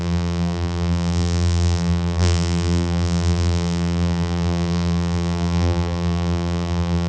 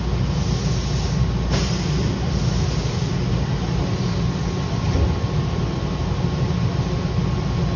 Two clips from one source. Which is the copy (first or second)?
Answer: first